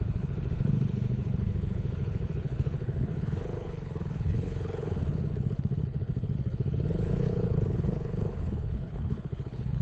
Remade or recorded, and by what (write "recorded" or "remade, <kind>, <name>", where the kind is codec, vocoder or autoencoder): remade, codec, HILCodec